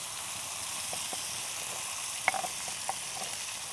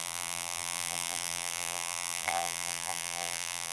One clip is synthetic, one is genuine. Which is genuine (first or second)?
first